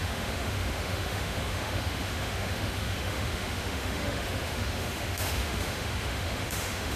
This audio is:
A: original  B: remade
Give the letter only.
B